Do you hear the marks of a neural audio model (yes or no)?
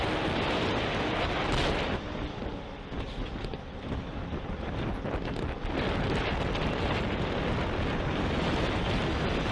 no